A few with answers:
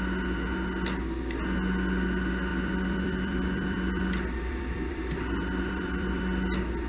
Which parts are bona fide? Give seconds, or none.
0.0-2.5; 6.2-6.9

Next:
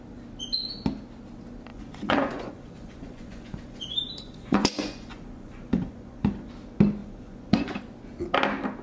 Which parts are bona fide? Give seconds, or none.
0.0-1.7; 6.5-7.0; 7.8-8.8